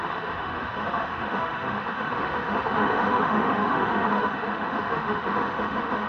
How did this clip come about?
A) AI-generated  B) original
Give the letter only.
A